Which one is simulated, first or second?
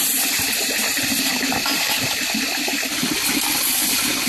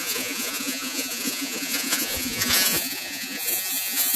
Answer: second